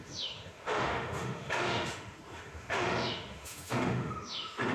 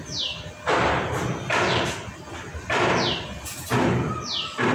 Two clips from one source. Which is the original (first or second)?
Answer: second